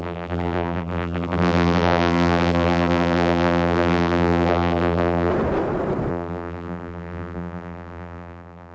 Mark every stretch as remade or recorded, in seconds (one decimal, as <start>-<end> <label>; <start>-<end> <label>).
0.0-5.3 remade; 5.3-6.1 recorded; 6.1-8.7 remade